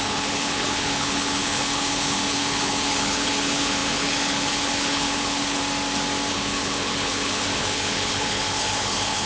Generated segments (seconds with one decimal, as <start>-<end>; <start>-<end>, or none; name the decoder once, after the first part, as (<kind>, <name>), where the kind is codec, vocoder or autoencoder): 0.0-5.6 (codec, HILCodec); 6.3-9.3